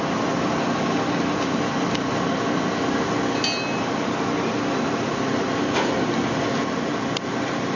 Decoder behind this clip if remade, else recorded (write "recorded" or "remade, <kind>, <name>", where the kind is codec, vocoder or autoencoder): recorded